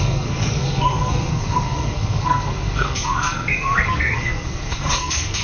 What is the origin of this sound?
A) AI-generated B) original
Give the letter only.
A